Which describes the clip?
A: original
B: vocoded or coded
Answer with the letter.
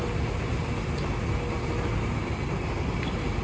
A